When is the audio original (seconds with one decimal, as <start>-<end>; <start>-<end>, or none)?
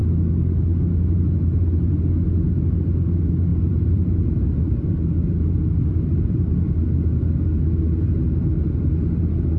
0.0-3.5; 7.0-9.6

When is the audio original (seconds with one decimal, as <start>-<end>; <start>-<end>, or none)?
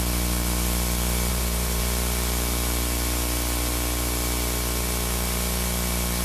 0.0-1.3; 1.8-6.2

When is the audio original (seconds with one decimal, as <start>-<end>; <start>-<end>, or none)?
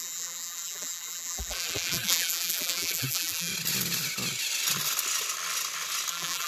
3.5-6.1